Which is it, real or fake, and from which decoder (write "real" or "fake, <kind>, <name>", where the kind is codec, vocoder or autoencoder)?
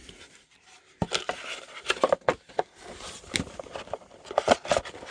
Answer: real